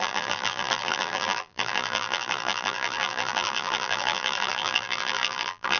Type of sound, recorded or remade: remade